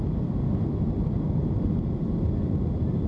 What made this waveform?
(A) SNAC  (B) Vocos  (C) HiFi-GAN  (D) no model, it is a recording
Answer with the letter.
D